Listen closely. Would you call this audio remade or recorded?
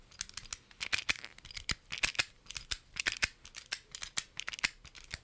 recorded